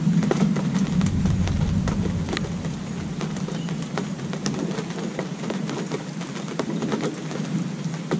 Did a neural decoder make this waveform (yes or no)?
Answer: no